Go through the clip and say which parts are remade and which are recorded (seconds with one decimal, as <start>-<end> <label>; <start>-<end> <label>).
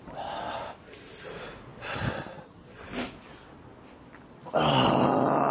0.0-5.5 recorded